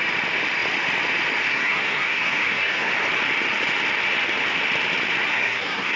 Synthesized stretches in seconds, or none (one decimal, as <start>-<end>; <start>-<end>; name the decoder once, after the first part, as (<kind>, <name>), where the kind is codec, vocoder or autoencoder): 1.5-2.9 (codec, SNAC); 5.3-6.0